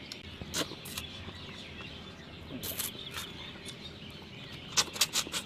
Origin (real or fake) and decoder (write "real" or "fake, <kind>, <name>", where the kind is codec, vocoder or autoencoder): real